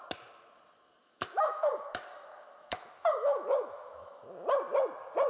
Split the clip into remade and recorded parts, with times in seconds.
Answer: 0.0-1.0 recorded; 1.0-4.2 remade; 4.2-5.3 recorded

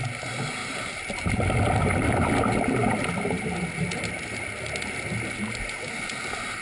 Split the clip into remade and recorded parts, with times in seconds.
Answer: 0.0-0.6 recorded; 0.6-1.8 remade; 1.8-6.6 recorded

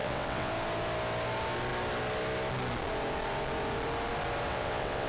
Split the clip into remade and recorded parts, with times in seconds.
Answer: 0.0-0.5 remade; 0.5-4.5 recorded; 4.5-5.1 remade

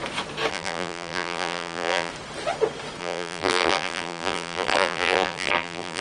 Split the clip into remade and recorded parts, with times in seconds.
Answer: 0.0-0.5 recorded; 0.5-2.1 remade; 2.1-3.0 recorded; 3.0-6.0 remade

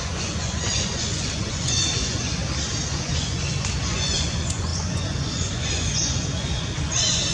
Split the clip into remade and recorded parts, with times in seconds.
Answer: 0.0-2.4 remade; 2.4-2.9 recorded; 2.9-7.3 remade

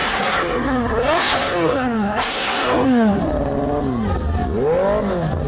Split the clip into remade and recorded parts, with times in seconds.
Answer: 0.0-3.2 remade; 3.2-5.5 recorded